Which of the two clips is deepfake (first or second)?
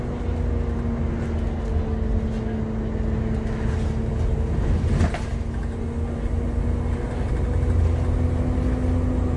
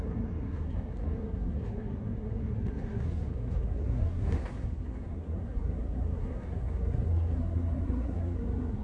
second